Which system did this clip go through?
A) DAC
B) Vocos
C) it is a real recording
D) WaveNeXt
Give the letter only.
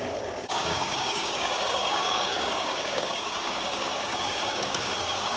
A